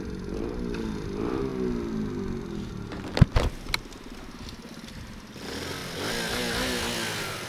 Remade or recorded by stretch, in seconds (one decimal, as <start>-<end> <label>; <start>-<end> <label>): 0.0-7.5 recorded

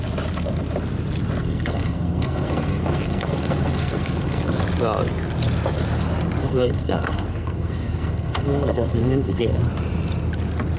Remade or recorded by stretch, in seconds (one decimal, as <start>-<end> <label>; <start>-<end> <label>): 0.0-1.4 recorded; 1.4-4.6 remade; 4.6-6.4 recorded; 6.4-9.6 remade; 9.6-10.8 recorded

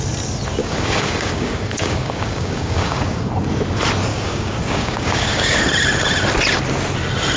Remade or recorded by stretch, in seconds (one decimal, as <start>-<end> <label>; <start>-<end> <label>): 0.0-0.6 recorded; 0.6-3.3 remade; 3.3-4.1 recorded; 4.1-5.6 remade; 5.6-7.4 recorded